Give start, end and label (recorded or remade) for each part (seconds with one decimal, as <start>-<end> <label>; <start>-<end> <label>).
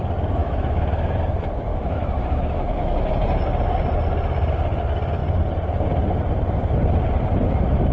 0.0-0.4 recorded; 0.4-1.2 remade; 1.2-1.7 recorded; 1.7-3.1 remade; 3.1-7.9 recorded